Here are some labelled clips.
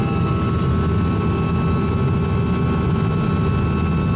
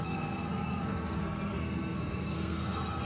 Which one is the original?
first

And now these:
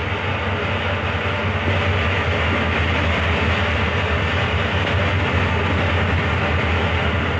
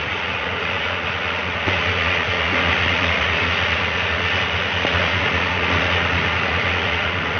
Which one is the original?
first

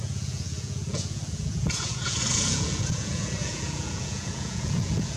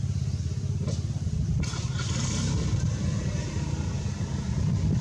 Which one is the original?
second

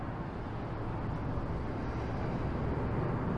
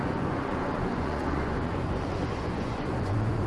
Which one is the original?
first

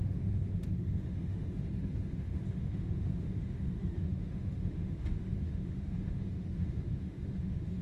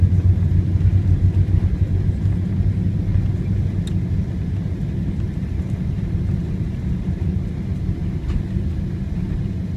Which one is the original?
second